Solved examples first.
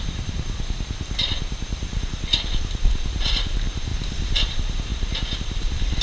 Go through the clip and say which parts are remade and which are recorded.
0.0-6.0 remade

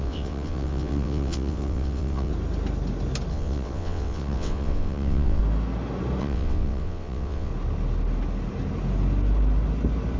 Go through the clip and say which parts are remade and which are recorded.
0.0-2.3 remade; 2.3-3.3 recorded; 3.3-5.4 remade; 5.4-6.2 recorded; 6.2-7.5 remade; 7.5-10.2 recorded

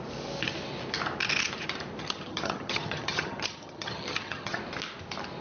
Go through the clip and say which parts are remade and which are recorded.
0.0-2.0 recorded; 2.0-4.6 remade; 4.6-5.4 recorded

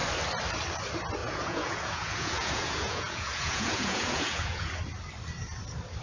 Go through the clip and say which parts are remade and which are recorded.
0.0-1.2 recorded; 1.2-4.8 remade; 4.8-6.0 recorded

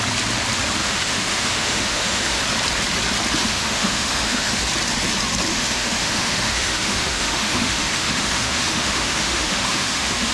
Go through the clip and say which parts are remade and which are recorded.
0.0-0.8 recorded; 0.8-2.4 remade; 2.4-3.4 recorded; 3.4-4.6 remade; 4.6-5.5 recorded; 5.5-10.3 remade

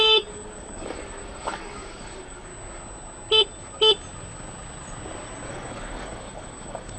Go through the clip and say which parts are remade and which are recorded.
0.0-2.5 remade; 2.5-5.5 recorded; 5.5-7.0 remade